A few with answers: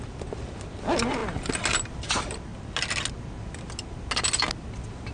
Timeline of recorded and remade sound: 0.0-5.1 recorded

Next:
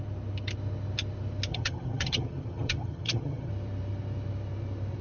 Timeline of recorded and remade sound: 0.0-1.5 recorded; 1.5-3.5 remade; 3.5-5.0 recorded

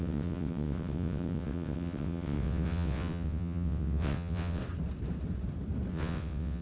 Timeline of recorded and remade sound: 0.0-4.6 remade; 4.6-5.9 recorded; 5.9-6.6 remade

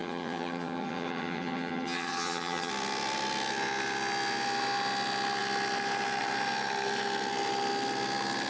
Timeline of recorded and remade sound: 0.0-2.7 remade; 2.7-8.5 recorded

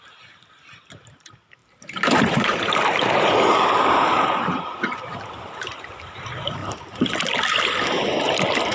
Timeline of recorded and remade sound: 0.0-1.6 recorded; 1.6-6.1 remade; 6.1-6.6 recorded; 6.6-7.1 remade; 7.1-8.7 recorded

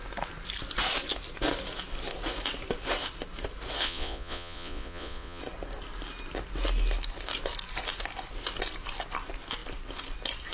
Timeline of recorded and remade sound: 0.0-3.8 recorded; 3.8-5.4 remade; 5.4-10.5 recorded

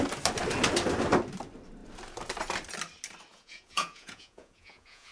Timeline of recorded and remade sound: 0.0-3.3 recorded; 3.3-5.1 remade

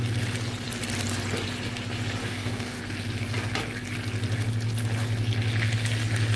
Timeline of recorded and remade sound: 0.0-2.2 recorded; 2.2-2.8 remade; 2.8-6.4 recorded